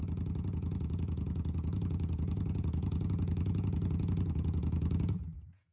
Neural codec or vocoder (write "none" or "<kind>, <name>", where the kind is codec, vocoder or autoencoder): vocoder, Vocos